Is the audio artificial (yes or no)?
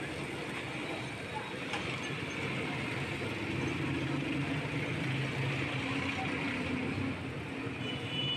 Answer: no